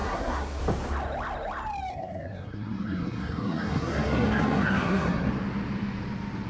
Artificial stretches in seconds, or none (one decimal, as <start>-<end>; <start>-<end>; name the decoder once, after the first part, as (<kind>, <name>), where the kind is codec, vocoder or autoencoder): 0.0-0.6 (codec, SNAC); 1.9-5.3